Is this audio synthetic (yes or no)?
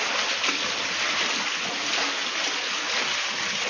no